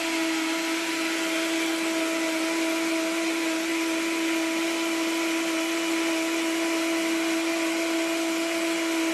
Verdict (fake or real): real